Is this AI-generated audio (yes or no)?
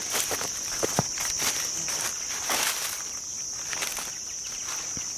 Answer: no